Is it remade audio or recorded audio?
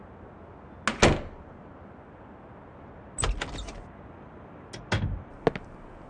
recorded